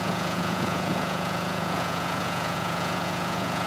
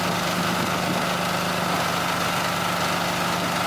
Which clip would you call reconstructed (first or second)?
first